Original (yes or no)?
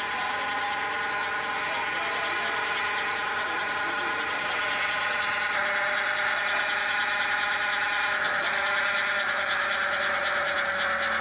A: yes